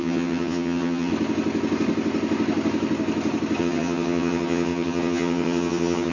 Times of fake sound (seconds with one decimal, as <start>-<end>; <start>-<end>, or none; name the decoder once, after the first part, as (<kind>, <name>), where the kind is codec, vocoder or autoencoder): 0.0-1.1 (vocoder, HiFi-GAN); 3.6-6.1